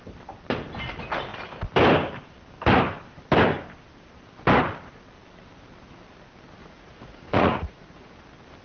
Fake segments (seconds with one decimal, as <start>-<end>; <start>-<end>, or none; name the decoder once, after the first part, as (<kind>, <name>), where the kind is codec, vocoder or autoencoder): 6.6-8.1 (vocoder, Vocos)